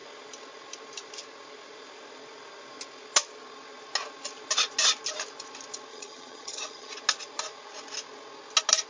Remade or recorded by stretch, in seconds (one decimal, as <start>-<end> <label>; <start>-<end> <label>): 0.0-5.9 recorded; 5.9-6.9 remade; 6.9-8.9 recorded